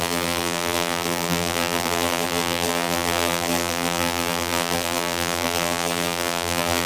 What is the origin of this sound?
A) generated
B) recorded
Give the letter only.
A